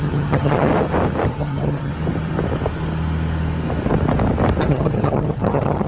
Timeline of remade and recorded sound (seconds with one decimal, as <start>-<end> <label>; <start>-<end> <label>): 0.0-0.7 remade; 0.7-1.3 recorded; 1.3-1.9 remade; 1.9-4.6 recorded; 4.6-5.9 remade